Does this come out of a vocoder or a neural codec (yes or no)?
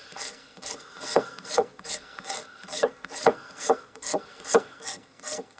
yes